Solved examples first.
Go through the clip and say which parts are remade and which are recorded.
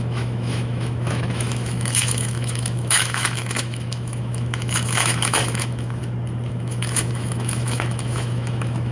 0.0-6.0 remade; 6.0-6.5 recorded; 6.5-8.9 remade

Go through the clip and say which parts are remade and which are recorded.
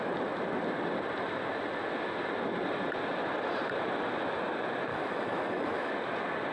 0.0-4.9 recorded; 4.9-5.9 remade; 5.9-6.5 recorded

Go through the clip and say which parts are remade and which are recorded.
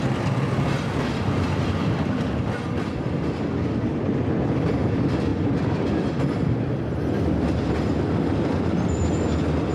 0.0-9.7 recorded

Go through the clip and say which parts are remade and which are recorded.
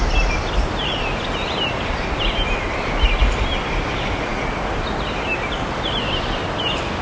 0.0-7.0 recorded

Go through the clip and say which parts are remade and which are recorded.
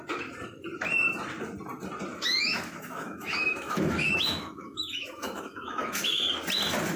0.0-2.1 recorded; 2.1-6.2 remade; 6.2-7.0 recorded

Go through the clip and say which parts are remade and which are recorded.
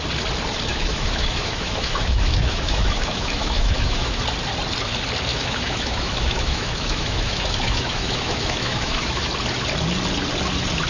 0.0-0.7 recorded; 0.7-4.2 remade; 4.2-5.3 recorded; 5.3-9.3 remade; 9.3-10.9 recorded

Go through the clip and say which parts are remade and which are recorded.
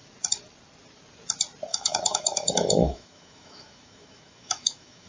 0.0-1.7 recorded; 1.7-5.1 remade